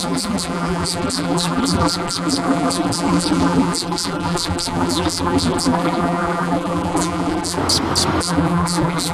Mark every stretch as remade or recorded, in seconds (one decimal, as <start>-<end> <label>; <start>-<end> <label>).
0.0-7.6 remade; 7.6-8.2 recorded; 8.2-9.1 remade